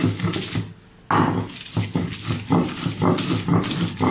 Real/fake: real